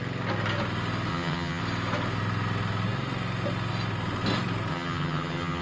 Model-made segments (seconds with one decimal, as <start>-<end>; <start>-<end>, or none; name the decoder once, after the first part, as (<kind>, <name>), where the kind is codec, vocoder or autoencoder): 1.1-1.6 (vocoder, HiFi-GAN); 4.7-5.6

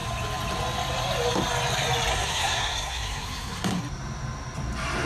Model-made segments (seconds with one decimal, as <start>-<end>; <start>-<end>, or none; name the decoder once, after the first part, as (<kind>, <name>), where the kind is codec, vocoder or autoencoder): 2.1-3.8 (codec, SNAC)

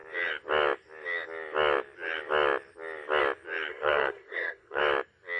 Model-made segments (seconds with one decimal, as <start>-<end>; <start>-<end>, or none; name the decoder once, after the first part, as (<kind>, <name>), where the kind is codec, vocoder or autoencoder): 3.7-4.8 (codec, SNAC)